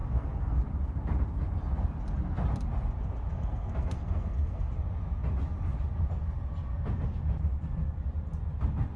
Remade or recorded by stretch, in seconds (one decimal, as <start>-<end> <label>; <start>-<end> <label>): 0.0-0.6 remade; 0.6-3.3 recorded; 3.3-4.7 remade; 4.7-9.0 recorded